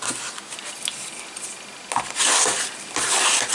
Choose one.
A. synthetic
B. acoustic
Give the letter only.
B